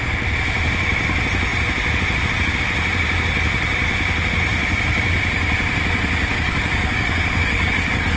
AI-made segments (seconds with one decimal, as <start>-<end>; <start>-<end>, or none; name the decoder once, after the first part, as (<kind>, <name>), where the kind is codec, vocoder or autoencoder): 6.3-8.2 (codec, DAC)